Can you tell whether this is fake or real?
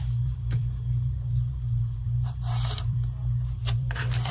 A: fake